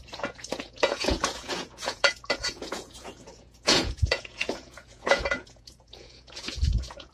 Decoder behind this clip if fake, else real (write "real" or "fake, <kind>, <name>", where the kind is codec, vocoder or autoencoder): fake, vocoder, Vocos